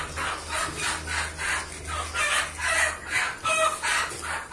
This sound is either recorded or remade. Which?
recorded